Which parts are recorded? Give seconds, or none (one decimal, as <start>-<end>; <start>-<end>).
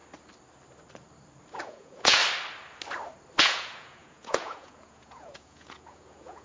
0.0-1.6; 2.2-3.4